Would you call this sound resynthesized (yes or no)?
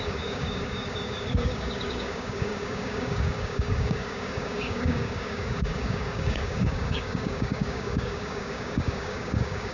yes